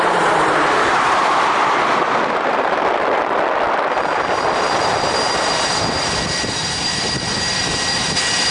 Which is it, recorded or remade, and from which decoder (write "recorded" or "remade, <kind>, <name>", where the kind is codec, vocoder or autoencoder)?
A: remade, vocoder, BigVGAN v2